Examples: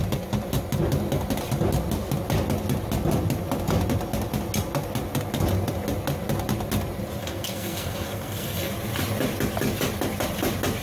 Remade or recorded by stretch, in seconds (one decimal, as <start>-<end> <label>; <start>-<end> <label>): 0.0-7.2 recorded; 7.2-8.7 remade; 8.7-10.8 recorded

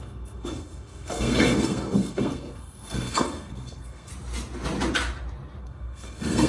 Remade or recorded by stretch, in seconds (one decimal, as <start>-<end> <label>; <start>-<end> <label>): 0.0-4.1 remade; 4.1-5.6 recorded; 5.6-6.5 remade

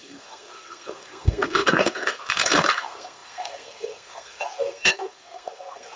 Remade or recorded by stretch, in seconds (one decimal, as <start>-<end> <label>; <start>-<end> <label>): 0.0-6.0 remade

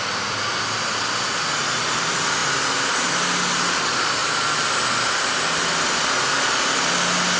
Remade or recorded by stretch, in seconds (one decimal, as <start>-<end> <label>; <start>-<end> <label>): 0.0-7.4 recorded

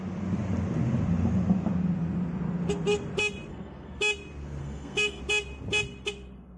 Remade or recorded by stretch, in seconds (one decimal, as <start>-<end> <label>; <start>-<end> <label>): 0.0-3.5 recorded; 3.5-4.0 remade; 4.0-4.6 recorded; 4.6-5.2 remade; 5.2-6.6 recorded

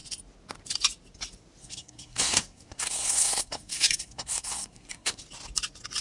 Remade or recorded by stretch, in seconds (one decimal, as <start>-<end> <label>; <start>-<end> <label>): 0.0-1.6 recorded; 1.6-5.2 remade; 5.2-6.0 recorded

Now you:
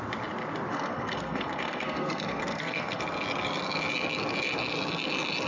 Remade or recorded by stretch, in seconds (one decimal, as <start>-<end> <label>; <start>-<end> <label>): 0.0-0.7 recorded; 0.7-3.0 remade; 3.0-5.5 recorded